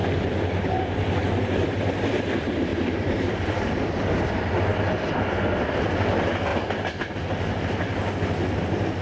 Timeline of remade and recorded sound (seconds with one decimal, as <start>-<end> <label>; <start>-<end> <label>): 0.0-1.2 remade; 1.2-2.7 recorded; 2.7-3.6 remade; 3.6-9.0 recorded